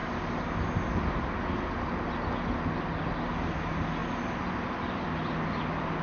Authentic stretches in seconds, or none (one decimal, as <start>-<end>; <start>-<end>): 0.0-6.0